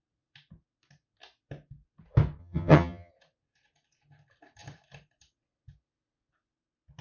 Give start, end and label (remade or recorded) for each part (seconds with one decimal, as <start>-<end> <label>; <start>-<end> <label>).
0.0-2.4 recorded; 2.4-3.1 remade; 3.1-7.0 recorded